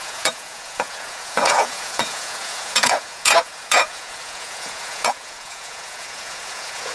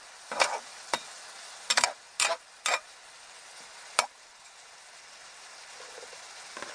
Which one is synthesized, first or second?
first